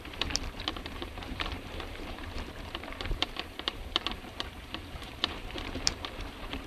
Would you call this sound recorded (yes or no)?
no